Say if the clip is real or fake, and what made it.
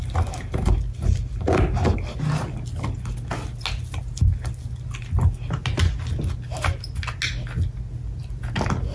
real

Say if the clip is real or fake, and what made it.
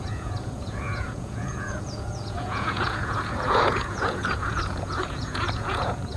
fake, vocoder, Vocos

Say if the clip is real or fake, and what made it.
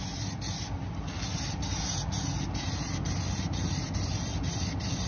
real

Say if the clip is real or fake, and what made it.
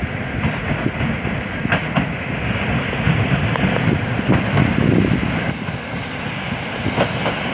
real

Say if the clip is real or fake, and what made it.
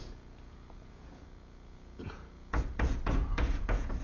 fake, vocoder, Vocos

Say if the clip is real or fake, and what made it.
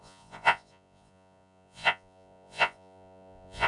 fake, vocoder, Vocos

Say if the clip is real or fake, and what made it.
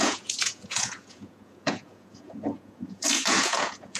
fake, vocoder, Vocos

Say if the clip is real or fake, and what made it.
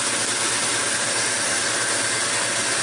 real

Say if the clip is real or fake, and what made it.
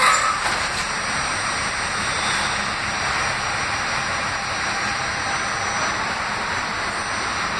real